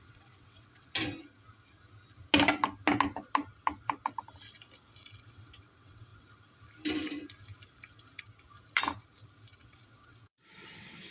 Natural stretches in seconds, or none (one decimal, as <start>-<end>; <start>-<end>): 0.9-5.2; 6.1-9.6